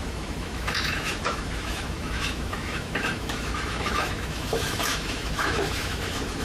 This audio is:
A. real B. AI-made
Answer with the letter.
B